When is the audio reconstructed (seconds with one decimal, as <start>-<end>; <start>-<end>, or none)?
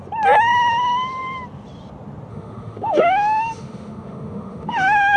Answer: 2.3-5.2